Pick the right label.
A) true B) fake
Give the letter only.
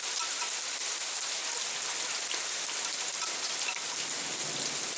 A